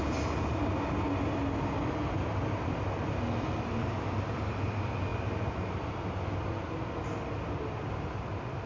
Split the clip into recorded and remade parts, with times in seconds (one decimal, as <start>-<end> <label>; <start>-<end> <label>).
0.0-8.7 recorded